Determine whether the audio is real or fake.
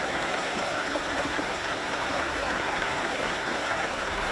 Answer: fake